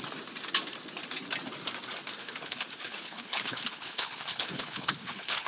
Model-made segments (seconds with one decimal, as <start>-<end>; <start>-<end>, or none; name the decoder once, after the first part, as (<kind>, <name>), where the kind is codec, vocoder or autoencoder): 2.2-5.5 (codec, HILCodec)